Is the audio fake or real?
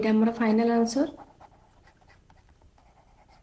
real